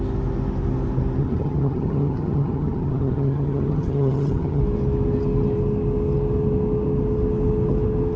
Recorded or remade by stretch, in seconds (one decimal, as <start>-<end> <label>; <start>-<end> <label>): 0.0-1.2 recorded; 1.2-4.6 remade; 4.6-8.2 recorded